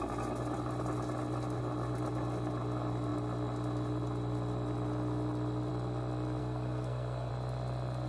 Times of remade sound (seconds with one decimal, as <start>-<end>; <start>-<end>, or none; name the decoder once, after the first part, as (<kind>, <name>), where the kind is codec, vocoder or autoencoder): 6.4-7.3 (codec, SNAC)